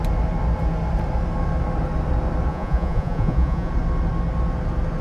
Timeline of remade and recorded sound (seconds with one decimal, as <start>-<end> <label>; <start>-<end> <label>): 0.0-2.5 recorded; 2.5-3.7 remade; 3.7-5.0 recorded